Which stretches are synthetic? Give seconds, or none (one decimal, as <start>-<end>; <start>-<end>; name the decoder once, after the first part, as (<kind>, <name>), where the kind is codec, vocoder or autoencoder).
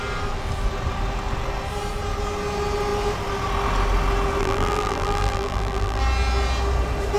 4.4-6.0 (vocoder, BigVGAN v2)